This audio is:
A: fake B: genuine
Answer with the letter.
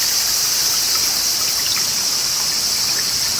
B